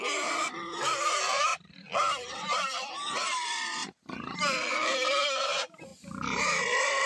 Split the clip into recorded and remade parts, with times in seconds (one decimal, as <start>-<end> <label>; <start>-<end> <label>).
0.0-3.8 remade; 3.8-4.7 recorded; 4.7-7.1 remade